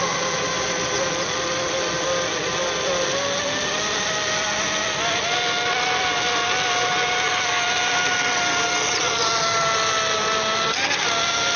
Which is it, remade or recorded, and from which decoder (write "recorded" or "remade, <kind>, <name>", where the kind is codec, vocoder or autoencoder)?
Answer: recorded